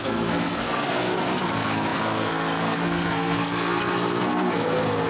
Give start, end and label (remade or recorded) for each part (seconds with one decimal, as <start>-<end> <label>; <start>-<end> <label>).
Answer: 0.0-5.1 remade